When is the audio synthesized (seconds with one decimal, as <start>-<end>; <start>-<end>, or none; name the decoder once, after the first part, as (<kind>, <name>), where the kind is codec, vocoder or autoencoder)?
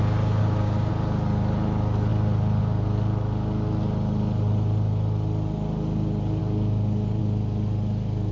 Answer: 0.4-0.9 (codec, DAC)